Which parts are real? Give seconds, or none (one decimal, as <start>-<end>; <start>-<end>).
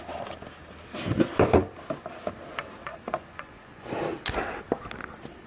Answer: 0.0-2.9; 3.9-5.5